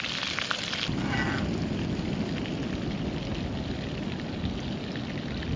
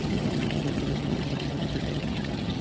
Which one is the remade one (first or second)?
second